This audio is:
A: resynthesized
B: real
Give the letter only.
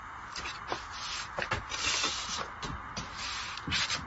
B